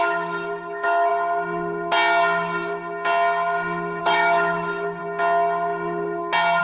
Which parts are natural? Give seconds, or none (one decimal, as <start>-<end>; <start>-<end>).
1.1-4.0; 5.0-6.6